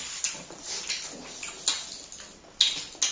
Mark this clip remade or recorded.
recorded